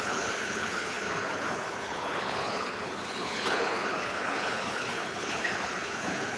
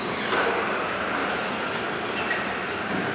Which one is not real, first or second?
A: first